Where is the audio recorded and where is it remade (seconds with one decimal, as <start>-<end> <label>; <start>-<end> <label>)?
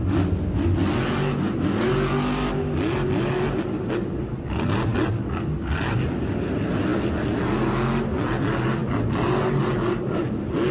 0.0-10.7 recorded